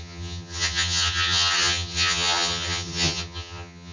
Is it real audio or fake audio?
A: fake